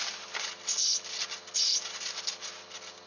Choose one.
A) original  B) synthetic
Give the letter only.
A